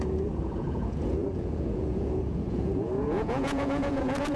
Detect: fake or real fake